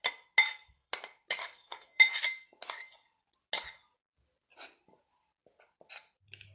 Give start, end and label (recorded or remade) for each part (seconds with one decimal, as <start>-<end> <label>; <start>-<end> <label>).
0.0-0.4 recorded; 0.4-0.9 remade; 0.9-1.4 recorded; 1.4-2.0 remade; 2.0-6.5 recorded